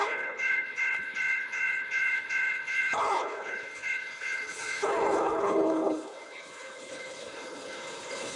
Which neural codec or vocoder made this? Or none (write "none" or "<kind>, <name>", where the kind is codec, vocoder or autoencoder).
codec, HILCodec